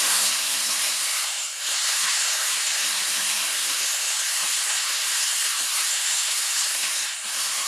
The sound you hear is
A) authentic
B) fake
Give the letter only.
B